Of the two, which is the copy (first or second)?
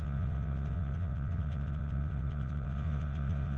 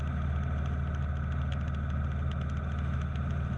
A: first